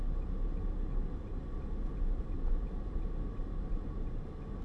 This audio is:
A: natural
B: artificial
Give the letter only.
A